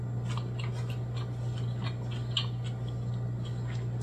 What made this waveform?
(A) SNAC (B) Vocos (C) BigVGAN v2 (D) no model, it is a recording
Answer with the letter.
D